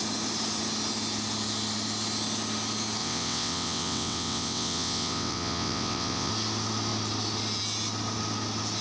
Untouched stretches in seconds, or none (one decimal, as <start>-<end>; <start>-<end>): 0.0-3.0; 6.3-8.8